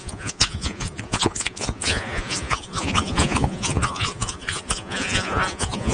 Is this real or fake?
fake